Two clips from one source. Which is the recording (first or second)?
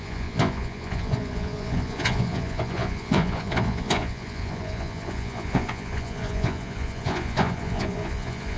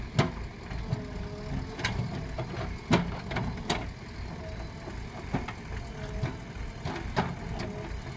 second